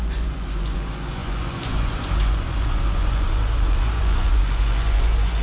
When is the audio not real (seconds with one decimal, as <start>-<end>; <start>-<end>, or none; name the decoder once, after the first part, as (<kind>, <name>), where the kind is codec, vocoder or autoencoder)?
0.0-5.4 (vocoder, Vocos)